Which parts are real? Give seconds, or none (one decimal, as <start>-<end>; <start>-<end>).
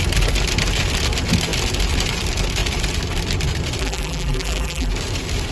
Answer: 0.0-3.8; 4.9-5.5